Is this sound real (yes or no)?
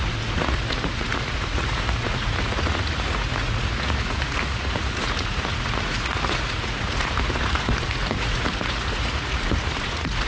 no